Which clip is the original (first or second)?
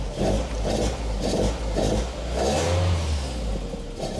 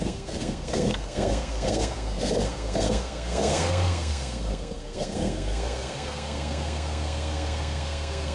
first